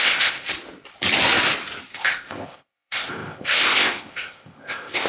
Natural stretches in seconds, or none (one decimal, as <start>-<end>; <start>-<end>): 0.5-1.9